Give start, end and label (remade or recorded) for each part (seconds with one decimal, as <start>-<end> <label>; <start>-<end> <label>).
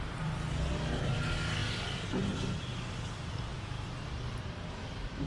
0.0-5.3 recorded